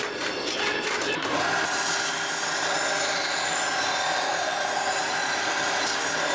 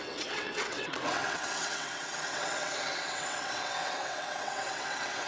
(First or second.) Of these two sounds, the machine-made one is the second